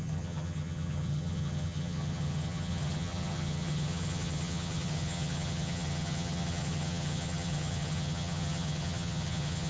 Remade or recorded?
remade